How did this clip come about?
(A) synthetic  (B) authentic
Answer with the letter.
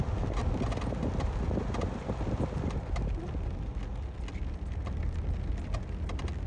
B